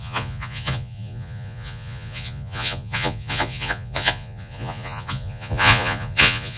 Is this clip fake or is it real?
fake